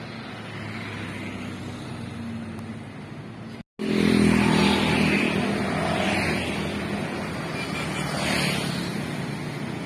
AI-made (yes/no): no